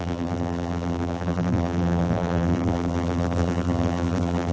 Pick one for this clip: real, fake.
fake